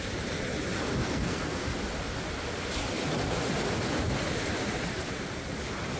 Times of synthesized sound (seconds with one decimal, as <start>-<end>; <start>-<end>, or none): 1.0-1.6